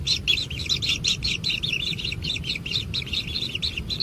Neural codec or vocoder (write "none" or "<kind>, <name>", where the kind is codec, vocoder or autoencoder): none